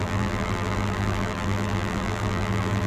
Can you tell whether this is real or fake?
fake